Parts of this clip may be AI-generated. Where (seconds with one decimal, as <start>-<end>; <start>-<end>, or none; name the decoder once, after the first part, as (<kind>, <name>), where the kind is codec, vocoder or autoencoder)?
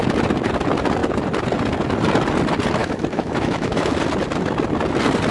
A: 2.8-3.9 (autoencoder, DAC-VAE)